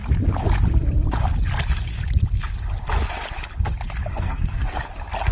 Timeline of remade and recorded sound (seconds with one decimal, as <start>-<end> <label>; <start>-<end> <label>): 0.0-4.1 recorded; 4.1-4.8 remade; 4.8-5.3 recorded